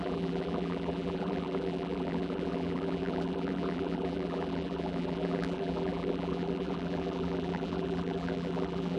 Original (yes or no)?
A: no